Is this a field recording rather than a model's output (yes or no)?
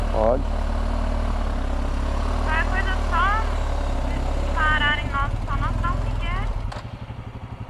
yes